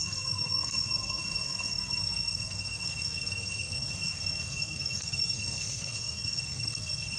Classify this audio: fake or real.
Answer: fake